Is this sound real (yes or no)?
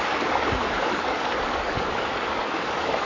no